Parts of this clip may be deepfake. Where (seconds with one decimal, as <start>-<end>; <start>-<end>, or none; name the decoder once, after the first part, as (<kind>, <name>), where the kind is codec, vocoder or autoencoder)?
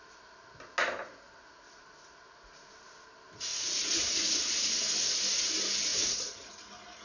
1.0-2.7 (vocoder, Vocos); 3.5-4.5; 5.9-6.6